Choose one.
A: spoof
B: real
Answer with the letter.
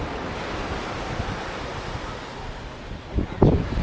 B